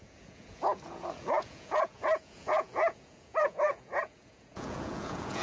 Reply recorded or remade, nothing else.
remade